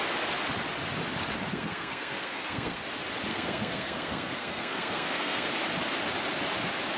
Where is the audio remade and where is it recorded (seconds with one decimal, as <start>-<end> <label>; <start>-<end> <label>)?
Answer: 0.0-1.5 recorded; 1.5-2.8 remade; 2.8-3.3 recorded; 3.3-5.5 remade; 5.5-7.0 recorded